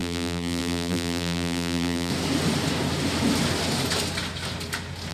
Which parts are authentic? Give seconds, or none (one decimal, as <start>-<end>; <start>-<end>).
2.1-5.1